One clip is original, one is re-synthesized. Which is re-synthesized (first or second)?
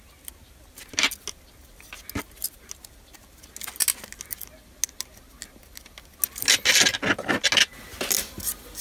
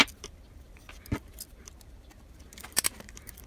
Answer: second